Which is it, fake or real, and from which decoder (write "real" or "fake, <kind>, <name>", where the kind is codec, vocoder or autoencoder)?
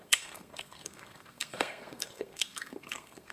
fake, codec, SNAC